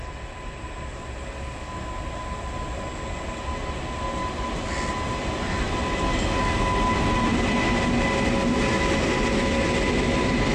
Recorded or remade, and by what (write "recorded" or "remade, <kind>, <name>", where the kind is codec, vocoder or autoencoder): recorded